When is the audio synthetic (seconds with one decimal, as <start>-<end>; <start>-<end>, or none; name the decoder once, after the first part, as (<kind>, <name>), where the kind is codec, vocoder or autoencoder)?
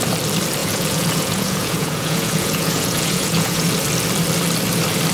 0.6-3.7 (vocoder, Vocos)